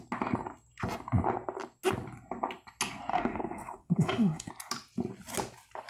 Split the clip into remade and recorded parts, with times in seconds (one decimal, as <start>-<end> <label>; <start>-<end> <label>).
0.0-3.1 recorded; 3.1-4.5 remade; 4.5-5.9 recorded